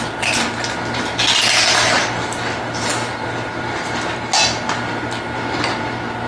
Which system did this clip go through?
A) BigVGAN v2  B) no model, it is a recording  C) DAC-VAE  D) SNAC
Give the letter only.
B